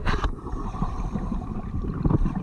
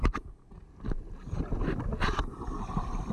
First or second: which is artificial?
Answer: first